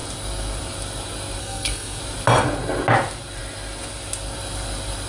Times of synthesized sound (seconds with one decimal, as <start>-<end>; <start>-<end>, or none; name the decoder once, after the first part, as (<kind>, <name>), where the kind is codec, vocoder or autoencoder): 1.4-2.0 (codec, SNAC)